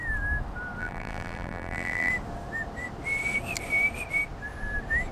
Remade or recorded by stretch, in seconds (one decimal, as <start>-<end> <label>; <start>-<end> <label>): 0.0-0.8 recorded; 0.8-2.1 remade; 2.1-5.1 recorded